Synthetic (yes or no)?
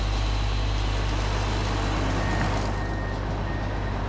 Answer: no